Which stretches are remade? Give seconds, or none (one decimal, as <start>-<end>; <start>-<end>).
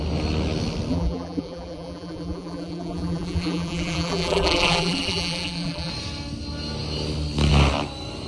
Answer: 0.9-5.9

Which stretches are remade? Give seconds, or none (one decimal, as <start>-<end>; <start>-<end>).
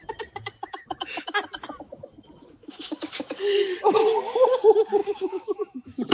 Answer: 2.6-3.4; 5.0-6.1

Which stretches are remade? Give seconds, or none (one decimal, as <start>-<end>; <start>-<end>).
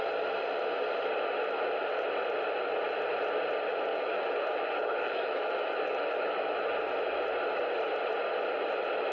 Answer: 3.9-6.8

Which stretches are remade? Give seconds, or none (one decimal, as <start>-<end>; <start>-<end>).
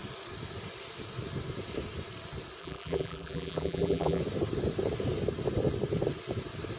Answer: 2.6-4.2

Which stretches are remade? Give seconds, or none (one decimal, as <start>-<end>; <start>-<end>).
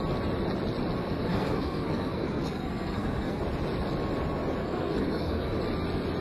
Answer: 1.0-3.4; 4.6-5.6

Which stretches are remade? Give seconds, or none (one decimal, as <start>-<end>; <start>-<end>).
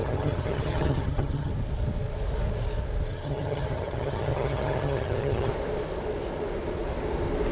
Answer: 0.0-1.5; 3.1-5.5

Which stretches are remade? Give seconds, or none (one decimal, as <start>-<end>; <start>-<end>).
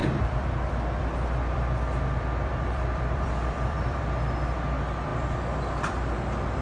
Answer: 0.0-4.0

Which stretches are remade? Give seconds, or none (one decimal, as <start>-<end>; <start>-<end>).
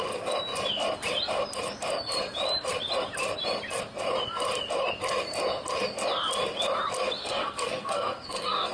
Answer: 7.2-8.7